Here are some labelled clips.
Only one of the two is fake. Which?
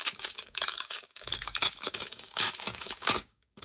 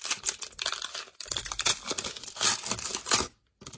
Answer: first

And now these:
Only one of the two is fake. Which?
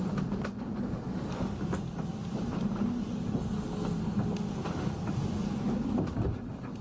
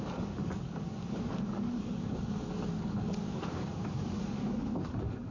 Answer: second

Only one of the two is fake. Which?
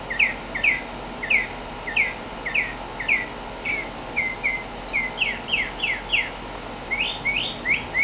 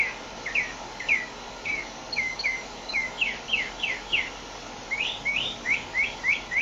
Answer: second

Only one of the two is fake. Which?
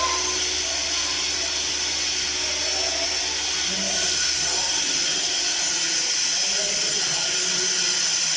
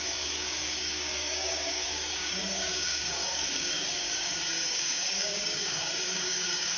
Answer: second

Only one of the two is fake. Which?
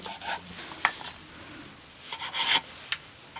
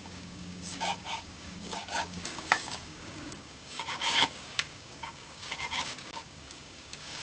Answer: second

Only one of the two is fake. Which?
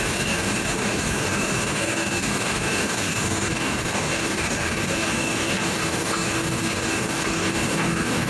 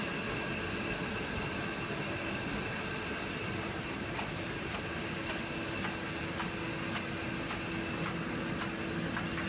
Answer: first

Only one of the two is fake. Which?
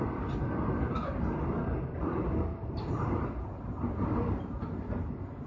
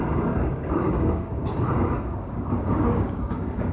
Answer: second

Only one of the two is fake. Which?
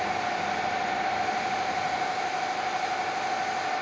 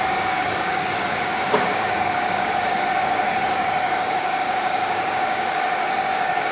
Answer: second